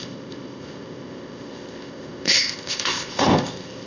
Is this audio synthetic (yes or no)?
yes